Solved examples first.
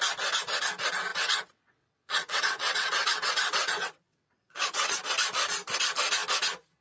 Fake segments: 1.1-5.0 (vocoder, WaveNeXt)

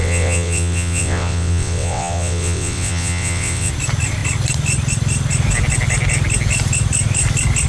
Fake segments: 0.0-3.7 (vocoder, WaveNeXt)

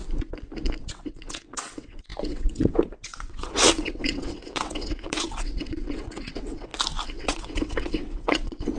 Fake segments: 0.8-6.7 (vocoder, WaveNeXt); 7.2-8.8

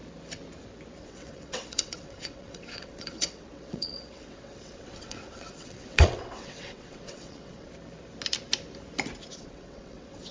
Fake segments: 1.0-7.7 (vocoder, WaveNeXt); 9.4-10.3